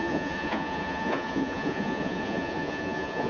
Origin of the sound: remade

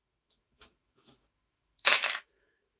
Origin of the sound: remade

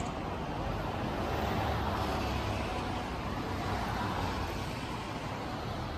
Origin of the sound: recorded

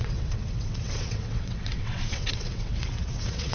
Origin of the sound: remade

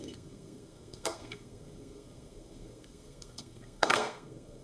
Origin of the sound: remade